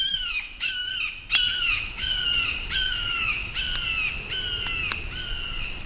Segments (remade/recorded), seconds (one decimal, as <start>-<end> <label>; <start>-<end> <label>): 0.0-0.9 remade; 0.9-1.6 recorded; 1.6-2.2 remade; 2.2-2.8 recorded; 2.8-3.4 remade; 3.4-5.9 recorded

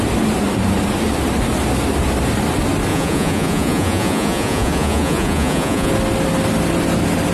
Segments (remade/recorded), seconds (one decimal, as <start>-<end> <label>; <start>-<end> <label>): 0.0-2.9 recorded; 2.9-5.9 remade; 5.9-7.3 recorded

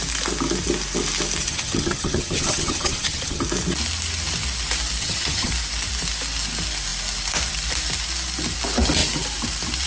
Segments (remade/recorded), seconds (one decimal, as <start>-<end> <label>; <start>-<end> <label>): 0.0-1.4 recorded; 1.4-3.4 remade; 3.4-5.0 recorded; 5.0-5.5 remade; 5.5-9.9 recorded

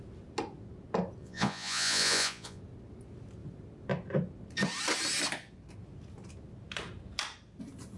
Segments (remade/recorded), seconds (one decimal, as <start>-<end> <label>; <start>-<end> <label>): 0.0-1.2 recorded; 1.2-2.6 remade; 2.6-8.0 recorded

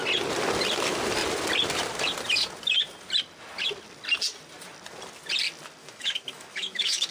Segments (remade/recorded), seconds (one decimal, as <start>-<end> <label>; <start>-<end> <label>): 0.0-5.8 recorded; 5.8-7.1 remade